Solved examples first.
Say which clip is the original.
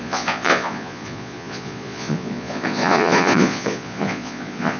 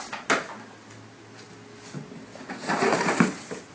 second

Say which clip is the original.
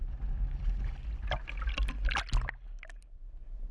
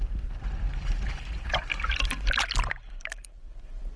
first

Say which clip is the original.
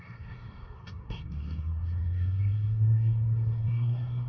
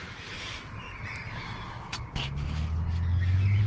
second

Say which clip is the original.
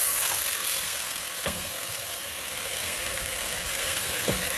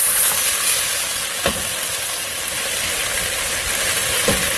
second